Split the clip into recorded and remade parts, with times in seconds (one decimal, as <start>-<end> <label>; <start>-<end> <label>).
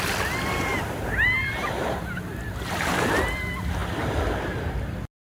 0.0-0.7 recorded; 0.7-2.2 remade; 2.2-5.3 recorded